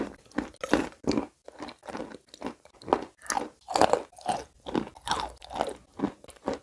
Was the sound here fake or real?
real